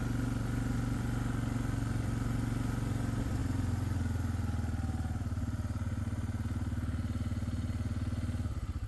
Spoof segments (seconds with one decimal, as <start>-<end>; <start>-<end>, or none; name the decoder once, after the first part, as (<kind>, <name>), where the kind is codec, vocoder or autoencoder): none